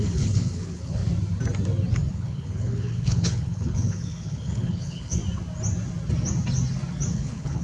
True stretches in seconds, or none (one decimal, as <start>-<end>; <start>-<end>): 1.0-2.1; 5.2-7.1

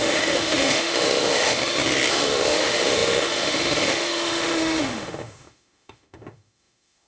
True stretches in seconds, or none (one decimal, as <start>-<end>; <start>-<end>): 1.6-2.1

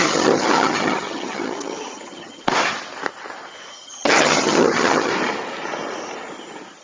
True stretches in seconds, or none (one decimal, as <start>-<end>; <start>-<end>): 2.4-3.7; 5.1-6.8

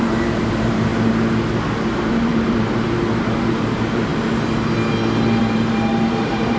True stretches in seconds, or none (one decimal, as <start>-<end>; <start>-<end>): 0.9-2.1; 4.1-5.4

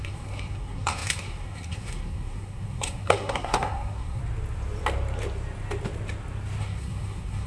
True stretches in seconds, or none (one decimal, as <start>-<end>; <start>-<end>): 4.2-6.6

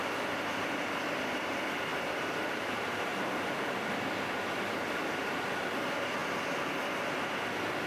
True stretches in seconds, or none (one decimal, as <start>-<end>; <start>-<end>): 0.0-1.9; 4.2-7.9

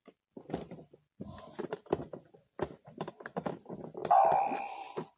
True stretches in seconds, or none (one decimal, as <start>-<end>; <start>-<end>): 0.0-5.2

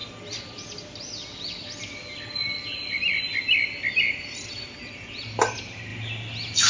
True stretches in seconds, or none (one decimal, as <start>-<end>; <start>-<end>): 0.0-6.7